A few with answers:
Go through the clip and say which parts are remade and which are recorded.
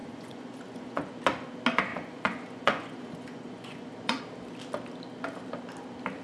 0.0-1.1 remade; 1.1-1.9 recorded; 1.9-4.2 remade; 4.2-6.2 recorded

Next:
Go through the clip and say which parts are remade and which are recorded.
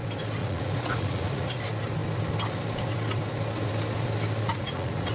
0.0-0.4 recorded; 0.4-1.6 remade; 1.6-4.5 recorded; 4.5-5.1 remade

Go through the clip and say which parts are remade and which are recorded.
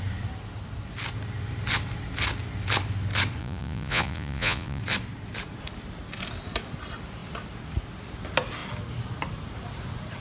0.0-3.4 recorded; 3.4-4.8 remade; 4.8-10.2 recorded